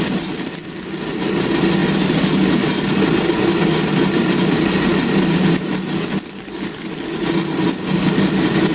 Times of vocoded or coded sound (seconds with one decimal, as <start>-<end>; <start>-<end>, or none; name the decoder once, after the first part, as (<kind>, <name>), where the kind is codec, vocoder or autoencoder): none

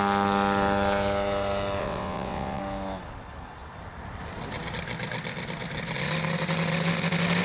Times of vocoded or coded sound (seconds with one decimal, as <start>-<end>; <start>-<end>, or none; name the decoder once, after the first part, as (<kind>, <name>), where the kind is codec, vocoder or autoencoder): 1.8-2.6 (vocoder, WaveNeXt)

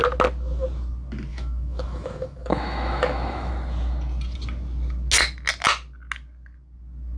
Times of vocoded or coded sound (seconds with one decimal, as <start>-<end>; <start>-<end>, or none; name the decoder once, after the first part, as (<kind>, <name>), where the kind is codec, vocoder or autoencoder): 1.3-3.5 (autoencoder, DAC-VAE)

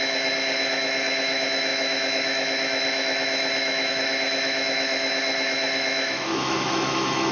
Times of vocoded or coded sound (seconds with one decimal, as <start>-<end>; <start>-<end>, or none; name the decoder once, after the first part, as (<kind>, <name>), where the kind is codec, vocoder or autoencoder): 0.0-7.3 (autoencoder, DAC-VAE)